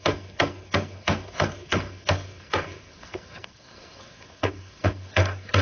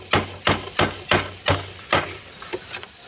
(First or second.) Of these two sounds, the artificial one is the first